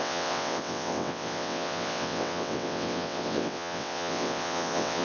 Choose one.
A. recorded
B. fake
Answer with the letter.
B